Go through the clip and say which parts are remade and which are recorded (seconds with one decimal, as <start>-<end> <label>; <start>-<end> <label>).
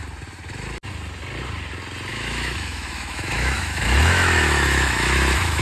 0.0-2.1 recorded; 2.1-5.6 remade